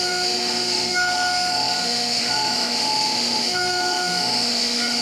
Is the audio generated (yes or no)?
yes